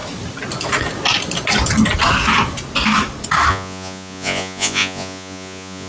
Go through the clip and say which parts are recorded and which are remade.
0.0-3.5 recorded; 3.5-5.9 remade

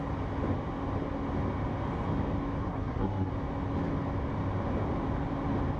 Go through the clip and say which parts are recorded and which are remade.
0.0-2.6 recorded; 2.6-3.3 remade; 3.3-5.8 recorded

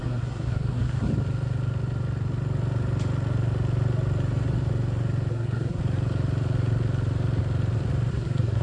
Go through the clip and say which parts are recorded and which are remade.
0.0-1.1 remade; 1.1-5.3 recorded; 5.3-5.8 remade; 5.8-8.1 recorded; 8.1-8.6 remade

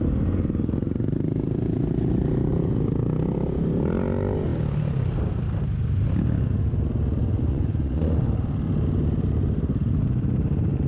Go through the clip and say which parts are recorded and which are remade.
0.0-7.5 recorded; 7.5-8.3 remade; 8.3-10.9 recorded

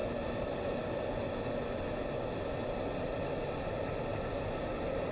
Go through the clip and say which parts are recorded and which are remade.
0.0-5.1 recorded

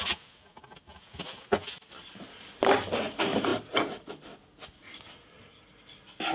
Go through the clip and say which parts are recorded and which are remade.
0.0-6.3 recorded